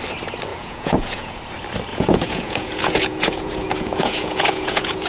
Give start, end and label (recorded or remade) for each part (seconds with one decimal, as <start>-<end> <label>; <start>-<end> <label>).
0.0-0.5 recorded; 0.5-1.4 remade; 1.4-1.9 recorded; 1.9-5.1 remade